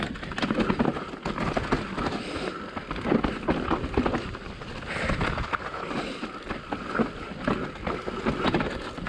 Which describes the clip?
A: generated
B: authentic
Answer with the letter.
B